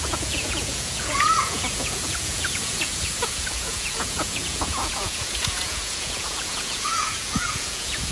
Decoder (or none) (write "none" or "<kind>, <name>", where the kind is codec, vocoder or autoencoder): vocoder, Vocos